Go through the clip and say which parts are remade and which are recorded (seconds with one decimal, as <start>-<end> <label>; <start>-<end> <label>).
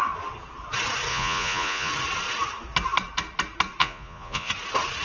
0.0-1.1 recorded; 1.1-1.9 remade; 1.9-3.8 recorded; 3.8-4.5 remade; 4.5-5.0 recorded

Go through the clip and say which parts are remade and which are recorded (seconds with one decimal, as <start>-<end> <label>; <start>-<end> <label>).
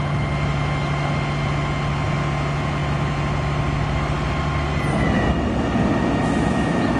0.0-7.0 recorded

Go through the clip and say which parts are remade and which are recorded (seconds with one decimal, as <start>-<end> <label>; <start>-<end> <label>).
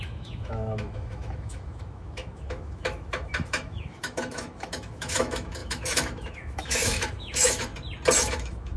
0.0-7.7 remade; 7.7-8.2 recorded; 8.2-8.8 remade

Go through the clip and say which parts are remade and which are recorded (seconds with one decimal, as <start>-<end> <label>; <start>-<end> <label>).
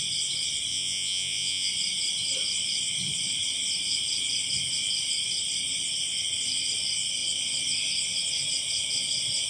0.0-0.7 recorded; 0.7-1.7 remade; 1.7-9.5 recorded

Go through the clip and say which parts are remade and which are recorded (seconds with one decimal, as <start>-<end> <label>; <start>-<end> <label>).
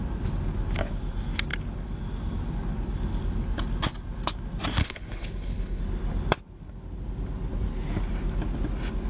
0.0-4.8 recorded; 4.8-5.8 remade; 5.8-9.1 recorded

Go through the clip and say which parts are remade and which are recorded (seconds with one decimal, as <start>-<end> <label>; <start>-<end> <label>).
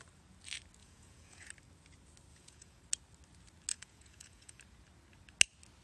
0.0-0.8 recorded; 0.8-1.5 remade; 1.5-2.3 recorded; 2.3-2.8 remade; 2.8-3.7 recorded; 3.7-4.6 remade; 4.6-5.8 recorded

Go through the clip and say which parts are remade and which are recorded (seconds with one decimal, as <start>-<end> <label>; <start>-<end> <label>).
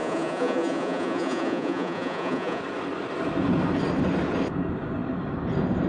0.0-2.6 remade; 2.6-5.9 recorded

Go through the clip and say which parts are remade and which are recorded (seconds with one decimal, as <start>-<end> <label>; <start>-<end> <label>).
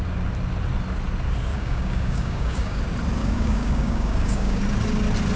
0.0-1.5 recorded; 1.5-2.8 remade; 2.8-3.2 recorded; 3.2-4.6 remade; 4.6-5.4 recorded